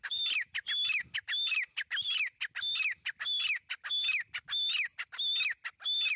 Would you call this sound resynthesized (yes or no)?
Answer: no